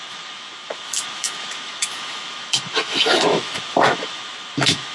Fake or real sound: fake